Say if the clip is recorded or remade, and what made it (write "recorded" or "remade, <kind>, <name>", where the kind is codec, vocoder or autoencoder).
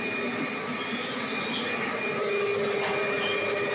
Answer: recorded